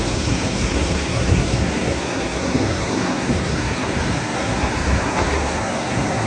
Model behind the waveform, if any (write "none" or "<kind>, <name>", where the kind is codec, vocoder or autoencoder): codec, SNAC